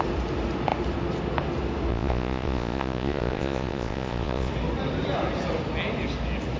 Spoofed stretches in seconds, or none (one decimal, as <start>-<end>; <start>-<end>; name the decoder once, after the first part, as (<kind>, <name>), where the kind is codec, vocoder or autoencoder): 1.9-4.5 (vocoder, Vocos)